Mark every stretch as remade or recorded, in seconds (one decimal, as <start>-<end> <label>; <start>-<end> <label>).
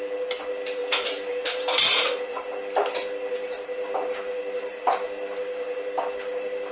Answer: 0.0-0.8 recorded; 0.8-2.4 remade; 2.4-6.7 recorded